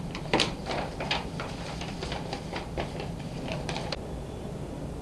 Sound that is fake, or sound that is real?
fake